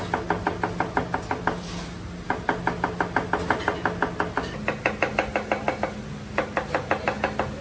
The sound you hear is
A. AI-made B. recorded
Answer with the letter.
B